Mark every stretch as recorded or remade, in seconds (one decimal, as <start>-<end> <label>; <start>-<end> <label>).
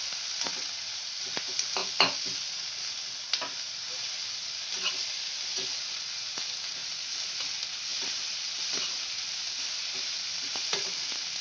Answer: 0.0-11.4 recorded